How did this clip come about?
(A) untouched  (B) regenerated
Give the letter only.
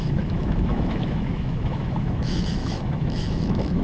B